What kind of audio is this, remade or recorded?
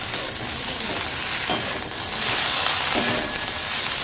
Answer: remade